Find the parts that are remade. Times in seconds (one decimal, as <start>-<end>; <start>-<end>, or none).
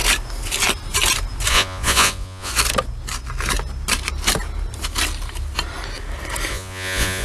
1.5-2.5; 6.5-7.2